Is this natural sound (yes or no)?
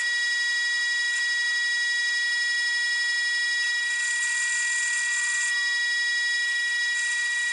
yes